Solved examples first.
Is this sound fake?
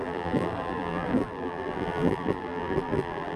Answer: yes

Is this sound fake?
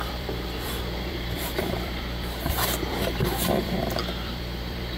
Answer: yes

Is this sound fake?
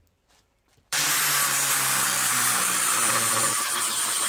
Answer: yes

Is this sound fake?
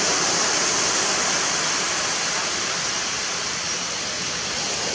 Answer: yes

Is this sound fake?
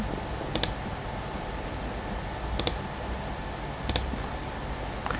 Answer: no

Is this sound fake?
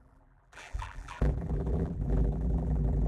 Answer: yes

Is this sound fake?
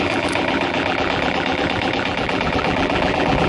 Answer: yes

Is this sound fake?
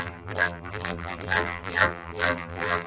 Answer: yes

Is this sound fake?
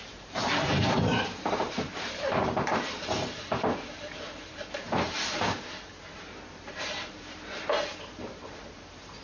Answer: yes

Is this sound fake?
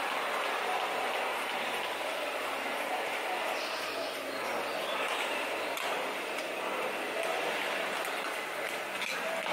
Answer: no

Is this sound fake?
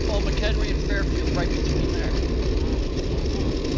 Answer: no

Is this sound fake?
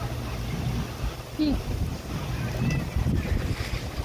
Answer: no